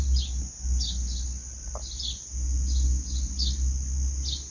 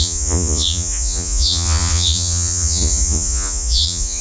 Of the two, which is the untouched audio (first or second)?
first